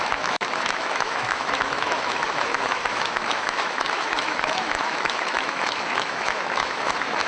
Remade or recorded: remade